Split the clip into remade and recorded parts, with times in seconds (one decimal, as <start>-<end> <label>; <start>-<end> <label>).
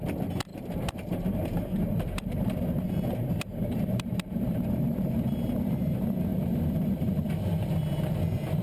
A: 0.0-0.5 recorded; 0.5-5.6 remade; 5.6-6.3 recorded; 6.3-7.3 remade; 7.3-8.6 recorded